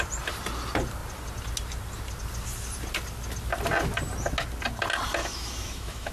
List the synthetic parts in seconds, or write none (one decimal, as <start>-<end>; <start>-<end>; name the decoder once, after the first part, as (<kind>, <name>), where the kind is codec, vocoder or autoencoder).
5.2-6.1 (autoencoder, DAC-VAE)